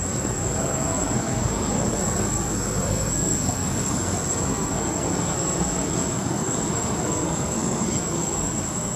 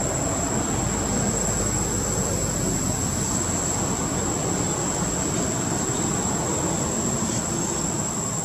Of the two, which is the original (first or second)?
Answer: second